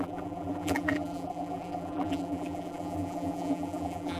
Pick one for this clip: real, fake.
fake